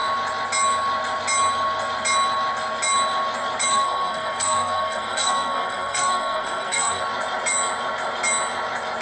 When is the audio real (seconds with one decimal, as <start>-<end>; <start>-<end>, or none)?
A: 0.0-3.7; 7.0-9.0